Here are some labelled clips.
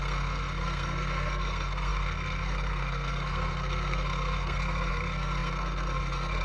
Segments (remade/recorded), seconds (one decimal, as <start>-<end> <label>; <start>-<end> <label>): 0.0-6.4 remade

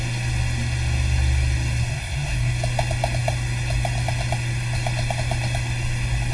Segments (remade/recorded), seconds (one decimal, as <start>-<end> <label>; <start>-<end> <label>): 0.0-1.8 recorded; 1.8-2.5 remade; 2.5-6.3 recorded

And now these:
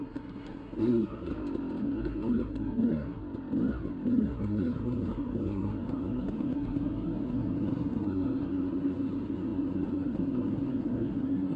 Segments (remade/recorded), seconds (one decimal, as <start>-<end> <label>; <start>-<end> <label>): 0.0-1.3 remade; 1.3-1.8 recorded; 1.8-3.2 remade; 3.2-4.1 recorded; 4.1-11.6 remade

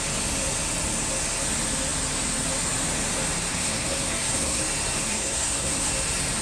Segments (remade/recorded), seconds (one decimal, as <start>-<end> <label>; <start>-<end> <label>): 0.0-3.5 recorded; 3.5-4.6 remade; 4.6-5.0 recorded; 5.0-5.9 remade; 5.9-6.4 recorded

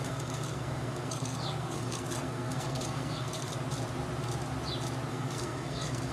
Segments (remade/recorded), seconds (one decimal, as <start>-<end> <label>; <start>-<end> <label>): 0.0-3.5 remade; 3.5-5.1 recorded; 5.1-6.1 remade

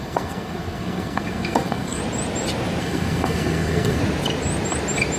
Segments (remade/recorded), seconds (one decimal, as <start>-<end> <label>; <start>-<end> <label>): 0.0-2.0 remade; 2.0-2.8 recorded; 2.8-4.0 remade; 4.0-5.2 recorded

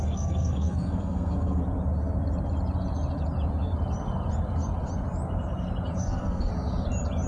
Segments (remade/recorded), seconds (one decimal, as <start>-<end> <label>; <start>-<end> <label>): 0.0-1.6 remade; 1.6-6.0 recorded; 6.0-6.5 remade; 6.5-7.3 recorded